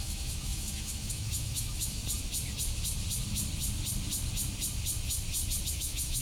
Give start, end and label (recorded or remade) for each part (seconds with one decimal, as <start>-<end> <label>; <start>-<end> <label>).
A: 0.0-2.0 remade; 2.0-5.7 recorded; 5.7-6.2 remade

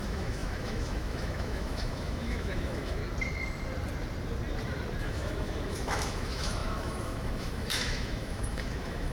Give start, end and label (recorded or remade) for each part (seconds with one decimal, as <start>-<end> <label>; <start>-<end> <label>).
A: 0.0-3.0 remade; 3.0-5.0 recorded; 5.0-9.1 remade

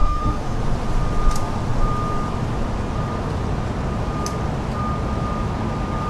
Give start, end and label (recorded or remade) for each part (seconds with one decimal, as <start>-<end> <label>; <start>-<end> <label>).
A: 0.0-0.6 remade; 0.6-6.1 recorded

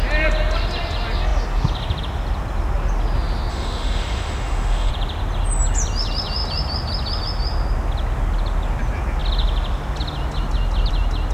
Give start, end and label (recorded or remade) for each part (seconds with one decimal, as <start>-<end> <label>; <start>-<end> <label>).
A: 0.0-3.5 recorded; 3.5-4.9 remade; 4.9-11.3 recorded

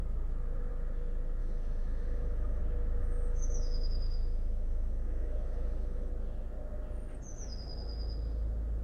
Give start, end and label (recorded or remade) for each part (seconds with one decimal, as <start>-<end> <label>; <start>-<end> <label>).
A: 0.0-1.4 recorded; 1.4-2.6 remade; 2.6-3.0 recorded; 3.0-6.1 remade; 6.1-8.8 recorded